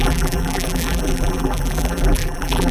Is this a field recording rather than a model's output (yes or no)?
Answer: no